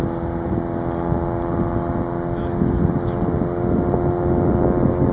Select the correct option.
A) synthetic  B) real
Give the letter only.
B